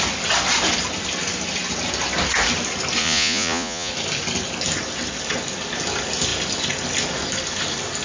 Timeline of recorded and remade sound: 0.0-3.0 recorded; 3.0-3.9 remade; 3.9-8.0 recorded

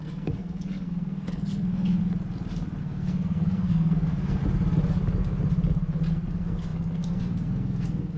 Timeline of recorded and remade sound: 0.0-2.0 remade; 2.0-2.8 recorded; 2.8-4.4 remade; 4.4-6.1 recorded; 6.1-8.2 remade

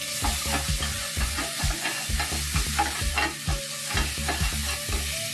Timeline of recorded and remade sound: 0.0-0.9 recorded; 0.9-2.1 remade; 2.1-5.3 recorded

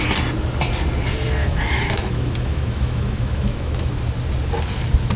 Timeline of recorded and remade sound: 0.0-1.4 recorded; 1.4-4.0 remade; 4.0-5.2 recorded